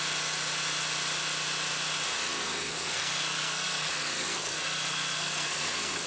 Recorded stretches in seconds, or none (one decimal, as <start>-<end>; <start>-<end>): 0.0-2.3